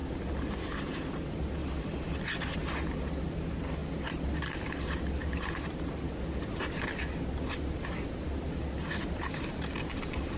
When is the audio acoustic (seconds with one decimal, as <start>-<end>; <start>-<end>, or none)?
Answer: 0.8-1.6; 2.9-3.8; 4.7-10.4